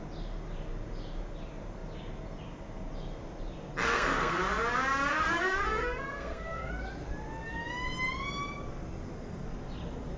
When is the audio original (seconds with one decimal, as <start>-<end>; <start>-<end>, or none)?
0.0-3.8; 4.4-5.1; 6.7-10.2